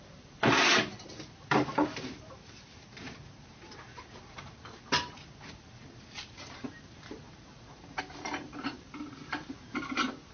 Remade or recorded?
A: remade